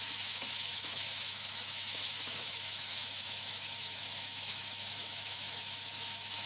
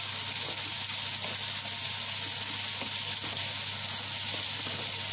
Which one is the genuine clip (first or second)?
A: second